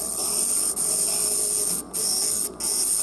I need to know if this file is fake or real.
real